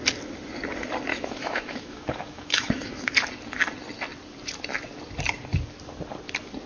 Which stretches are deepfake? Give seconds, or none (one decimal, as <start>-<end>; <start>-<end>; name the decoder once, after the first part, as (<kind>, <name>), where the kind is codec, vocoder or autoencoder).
1.1-3.1 (autoencoder, DAC-VAE)